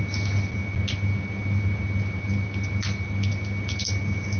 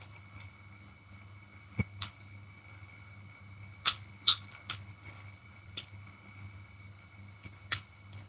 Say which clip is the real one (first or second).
first